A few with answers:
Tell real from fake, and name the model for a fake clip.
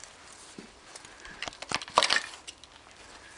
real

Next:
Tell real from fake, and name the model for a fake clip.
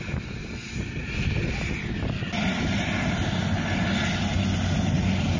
real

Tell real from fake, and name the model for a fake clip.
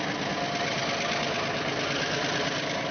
real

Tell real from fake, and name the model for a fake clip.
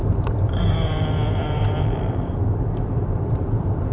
fake, vocoder, BigVGAN v2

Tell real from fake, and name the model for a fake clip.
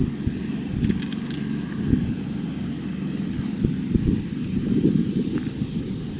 real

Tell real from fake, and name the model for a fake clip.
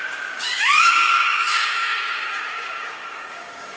fake, codec, DAC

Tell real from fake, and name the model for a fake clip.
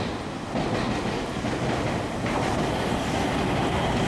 real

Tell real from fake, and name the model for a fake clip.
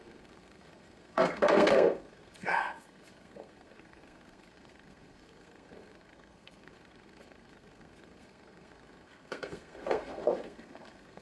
fake, codec, SNAC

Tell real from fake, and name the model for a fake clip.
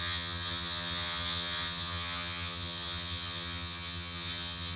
fake, vocoder, HiFi-GAN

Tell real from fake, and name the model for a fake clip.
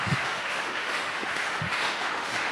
fake, autoencoder, DAC-VAE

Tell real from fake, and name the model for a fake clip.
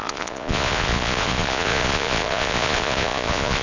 fake, vocoder, Vocos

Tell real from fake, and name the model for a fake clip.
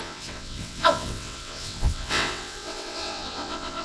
fake, vocoder, WaveNeXt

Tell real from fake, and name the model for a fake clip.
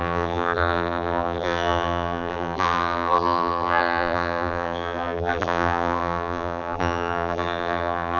fake, vocoder, BigVGAN v2